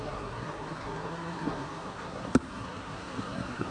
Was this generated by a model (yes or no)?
yes